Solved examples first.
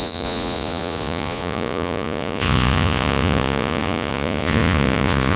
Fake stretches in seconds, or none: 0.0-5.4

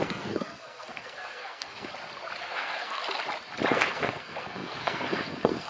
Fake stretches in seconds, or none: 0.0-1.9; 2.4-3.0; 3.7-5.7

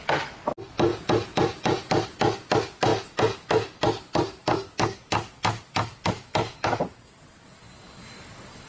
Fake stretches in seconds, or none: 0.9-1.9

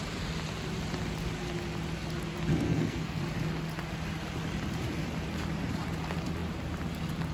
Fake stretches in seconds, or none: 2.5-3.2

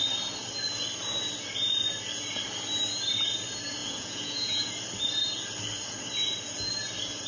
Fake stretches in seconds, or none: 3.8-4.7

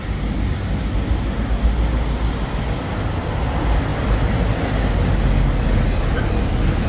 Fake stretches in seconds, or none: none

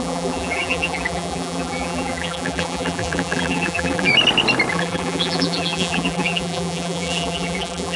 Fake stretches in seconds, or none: 0.0-4.1; 4.7-8.0

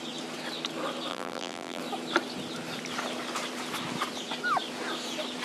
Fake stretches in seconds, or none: 1.1-1.8